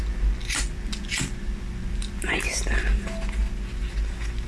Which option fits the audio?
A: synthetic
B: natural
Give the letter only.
B